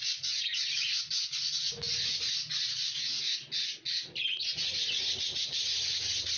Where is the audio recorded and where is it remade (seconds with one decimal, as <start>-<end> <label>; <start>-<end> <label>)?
0.0-6.4 recorded